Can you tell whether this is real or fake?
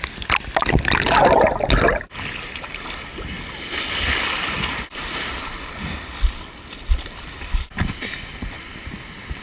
real